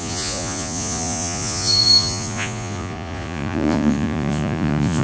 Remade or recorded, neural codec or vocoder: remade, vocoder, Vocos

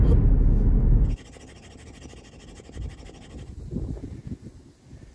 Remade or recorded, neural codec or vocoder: recorded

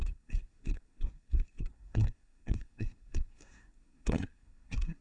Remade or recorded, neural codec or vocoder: remade, codec, SNAC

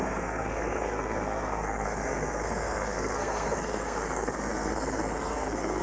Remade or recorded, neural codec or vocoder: remade, codec, SNAC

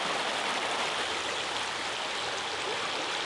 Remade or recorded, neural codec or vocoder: recorded